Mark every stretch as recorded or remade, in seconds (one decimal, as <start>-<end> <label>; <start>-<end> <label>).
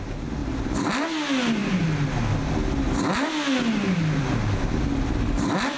0.0-5.8 recorded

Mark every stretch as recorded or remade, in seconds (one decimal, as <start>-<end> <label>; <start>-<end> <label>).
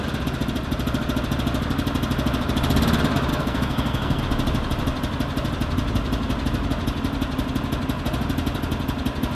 0.0-3.3 recorded; 3.3-4.2 remade; 4.2-9.3 recorded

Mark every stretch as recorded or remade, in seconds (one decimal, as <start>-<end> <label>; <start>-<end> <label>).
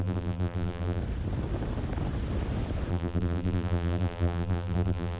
0.0-1.0 remade; 1.0-2.9 recorded; 2.9-5.2 remade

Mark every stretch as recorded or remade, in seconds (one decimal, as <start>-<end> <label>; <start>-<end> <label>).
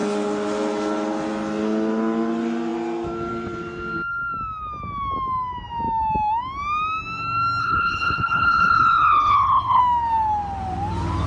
0.0-7.6 recorded; 7.6-9.8 remade; 9.8-11.3 recorded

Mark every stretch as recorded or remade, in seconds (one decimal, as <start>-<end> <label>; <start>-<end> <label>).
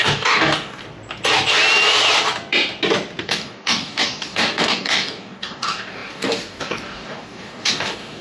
0.0-0.8 remade; 0.8-3.2 recorded; 3.2-8.2 remade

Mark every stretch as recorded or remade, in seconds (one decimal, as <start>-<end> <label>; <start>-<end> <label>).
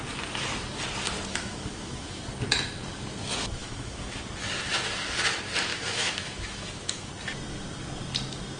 0.0-1.3 recorded; 1.3-2.2 remade; 2.2-3.6 recorded; 3.6-4.2 remade; 4.2-5.7 recorded; 5.7-7.1 remade; 7.1-8.6 recorded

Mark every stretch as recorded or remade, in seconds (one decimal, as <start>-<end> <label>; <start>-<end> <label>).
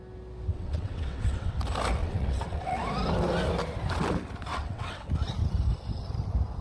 0.0-0.5 recorded; 0.5-1.6 remade; 1.6-2.0 recorded; 2.0-2.8 remade; 2.8-4.5 recorded; 4.5-5.1 remade; 5.1-6.6 recorded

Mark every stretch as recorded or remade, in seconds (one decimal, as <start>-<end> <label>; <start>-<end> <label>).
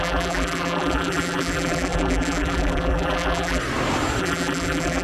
0.0-3.6 remade; 3.6-4.2 recorded; 4.2-5.0 remade